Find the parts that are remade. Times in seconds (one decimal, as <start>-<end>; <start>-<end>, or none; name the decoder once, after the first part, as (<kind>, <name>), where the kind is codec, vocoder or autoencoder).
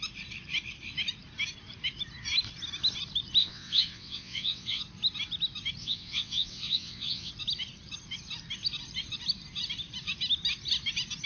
3.4-4.8 (vocoder, WaveNeXt); 5.8-7.3